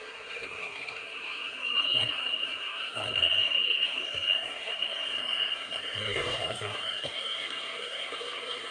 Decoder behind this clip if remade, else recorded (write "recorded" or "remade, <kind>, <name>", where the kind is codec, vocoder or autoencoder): remade, codec, SNAC